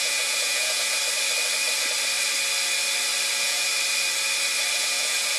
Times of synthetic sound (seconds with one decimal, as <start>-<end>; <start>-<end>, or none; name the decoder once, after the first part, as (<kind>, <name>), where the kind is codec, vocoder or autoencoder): 0.0-1.0 (vocoder, Vocos); 3.3-3.7; 4.7-5.4

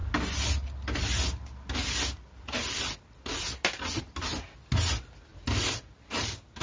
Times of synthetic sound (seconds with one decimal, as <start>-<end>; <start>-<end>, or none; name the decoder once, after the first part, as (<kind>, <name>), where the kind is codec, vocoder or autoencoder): none

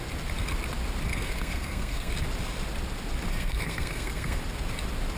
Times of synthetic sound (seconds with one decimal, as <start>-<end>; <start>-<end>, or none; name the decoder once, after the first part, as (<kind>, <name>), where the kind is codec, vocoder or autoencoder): 1.1-2.1 (codec, SNAC); 3.3-4.4